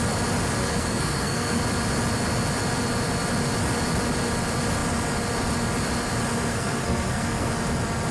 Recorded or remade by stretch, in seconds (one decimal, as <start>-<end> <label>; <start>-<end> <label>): 0.0-0.6 recorded; 0.6-1.6 remade; 1.6-6.5 recorded; 6.5-7.5 remade; 7.5-8.1 recorded